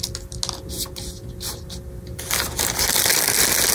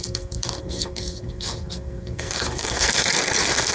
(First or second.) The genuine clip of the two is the first